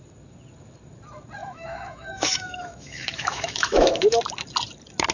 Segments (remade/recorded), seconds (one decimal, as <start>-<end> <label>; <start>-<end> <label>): 0.0-1.4 recorded; 1.4-4.2 remade; 4.2-5.1 recorded